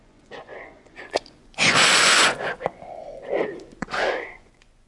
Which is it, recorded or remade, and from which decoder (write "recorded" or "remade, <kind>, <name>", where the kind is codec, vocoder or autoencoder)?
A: remade, vocoder, Vocos